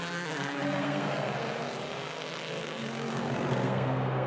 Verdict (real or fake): fake